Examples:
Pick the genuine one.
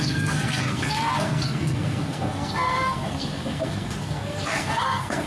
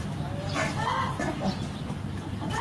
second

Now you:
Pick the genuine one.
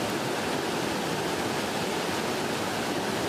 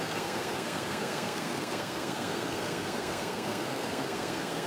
first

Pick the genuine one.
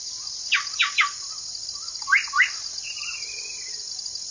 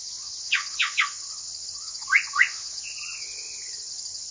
first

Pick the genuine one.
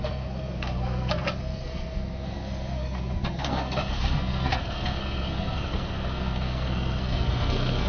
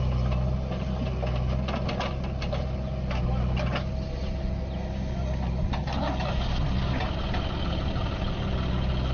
second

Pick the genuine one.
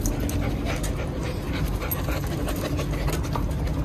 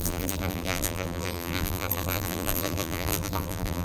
first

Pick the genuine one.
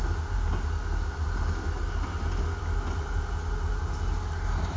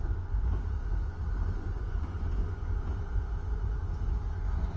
first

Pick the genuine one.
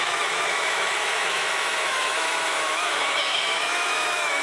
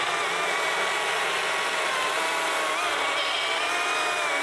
second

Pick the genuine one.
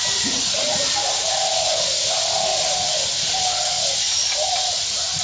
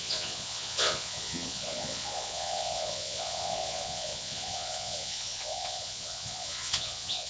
first